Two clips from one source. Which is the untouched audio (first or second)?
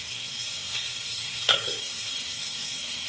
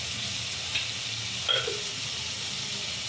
second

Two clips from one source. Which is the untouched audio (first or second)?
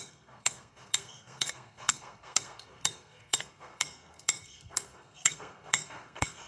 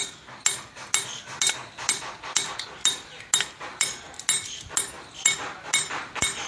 second